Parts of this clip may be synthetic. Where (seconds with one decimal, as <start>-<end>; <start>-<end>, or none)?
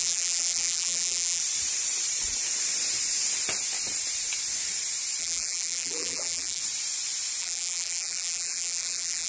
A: 0.0-1.4; 5.2-6.6; 7.4-9.3